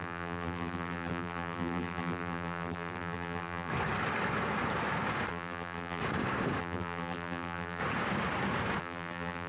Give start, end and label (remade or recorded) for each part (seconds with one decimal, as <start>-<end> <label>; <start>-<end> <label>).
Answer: 0.0-3.7 remade; 3.7-5.3 recorded; 5.3-6.0 remade; 6.0-6.6 recorded; 6.6-7.8 remade; 7.8-8.8 recorded; 8.8-9.5 remade